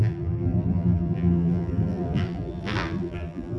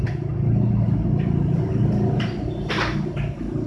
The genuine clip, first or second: second